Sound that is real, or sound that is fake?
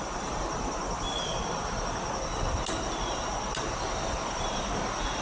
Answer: real